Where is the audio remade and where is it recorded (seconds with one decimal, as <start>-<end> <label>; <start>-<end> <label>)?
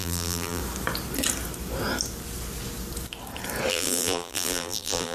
0.0-0.6 remade; 0.6-3.7 recorded; 3.7-5.1 remade